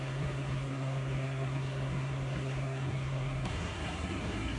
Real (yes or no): no